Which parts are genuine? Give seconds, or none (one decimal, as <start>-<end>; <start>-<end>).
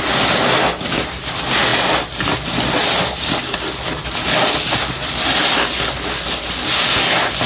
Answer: 0.0-2.8; 3.3-7.5